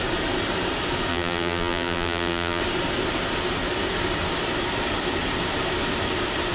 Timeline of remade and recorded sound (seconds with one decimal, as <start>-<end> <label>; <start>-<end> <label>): 0.0-1.1 recorded; 1.1-2.6 remade; 2.6-6.5 recorded